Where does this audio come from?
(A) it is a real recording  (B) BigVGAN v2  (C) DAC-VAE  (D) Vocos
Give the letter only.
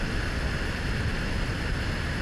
A